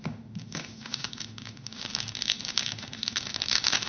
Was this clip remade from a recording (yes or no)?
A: yes